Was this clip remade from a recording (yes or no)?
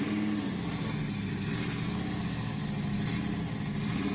no